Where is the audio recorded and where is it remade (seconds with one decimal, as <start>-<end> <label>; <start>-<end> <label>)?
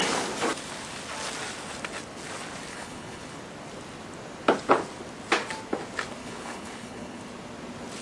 0.0-2.7 recorded; 2.7-3.4 remade; 3.4-6.2 recorded; 6.2-7.2 remade; 7.2-8.0 recorded